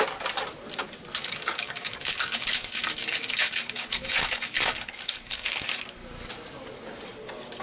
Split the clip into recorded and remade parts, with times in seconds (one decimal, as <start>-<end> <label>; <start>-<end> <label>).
0.0-1.2 recorded; 1.2-5.8 remade; 5.8-7.6 recorded

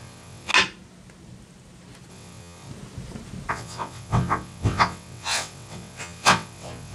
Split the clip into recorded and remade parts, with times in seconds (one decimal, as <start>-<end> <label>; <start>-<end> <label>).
0.0-0.5 remade; 0.5-2.1 recorded; 2.1-2.7 remade; 2.7-3.5 recorded; 3.5-6.9 remade

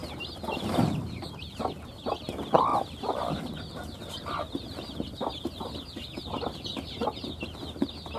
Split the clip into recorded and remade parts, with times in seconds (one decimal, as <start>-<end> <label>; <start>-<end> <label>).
0.0-0.6 recorded; 0.6-8.2 remade

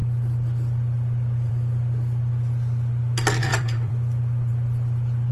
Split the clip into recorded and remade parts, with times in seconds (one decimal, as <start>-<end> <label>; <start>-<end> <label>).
0.0-3.4 recorded; 3.4-3.9 remade; 3.9-5.3 recorded